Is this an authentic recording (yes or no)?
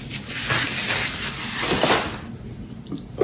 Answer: yes